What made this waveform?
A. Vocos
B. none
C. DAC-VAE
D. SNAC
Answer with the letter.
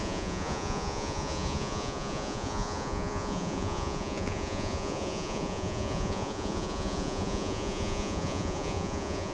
A